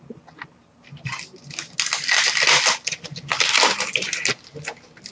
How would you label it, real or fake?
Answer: real